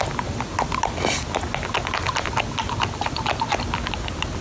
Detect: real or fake real